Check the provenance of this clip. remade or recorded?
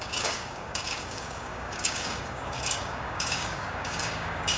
remade